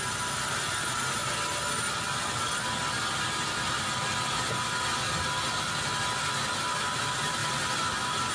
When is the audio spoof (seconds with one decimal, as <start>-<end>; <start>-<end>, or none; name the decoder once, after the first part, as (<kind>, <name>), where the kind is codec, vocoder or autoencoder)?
none